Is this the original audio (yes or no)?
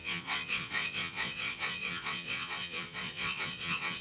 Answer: no